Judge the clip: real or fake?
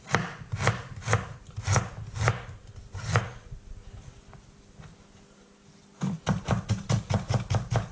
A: real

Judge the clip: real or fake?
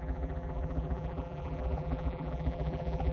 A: fake